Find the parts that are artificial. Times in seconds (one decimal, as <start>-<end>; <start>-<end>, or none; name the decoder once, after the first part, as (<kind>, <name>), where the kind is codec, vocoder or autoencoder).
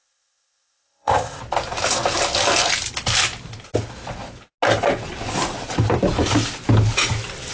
0.0-1.4 (codec, ZipCodec)